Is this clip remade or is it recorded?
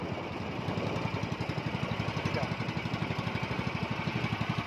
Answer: recorded